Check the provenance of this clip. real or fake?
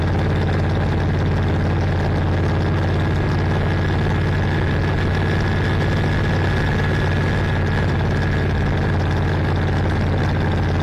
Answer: real